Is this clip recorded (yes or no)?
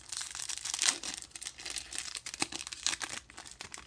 yes